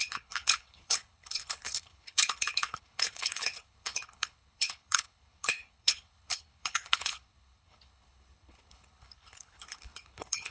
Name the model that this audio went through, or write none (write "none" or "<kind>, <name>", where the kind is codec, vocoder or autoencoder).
codec, HILCodec